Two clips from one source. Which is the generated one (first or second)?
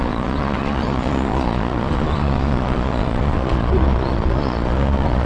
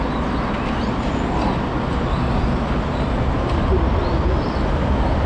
first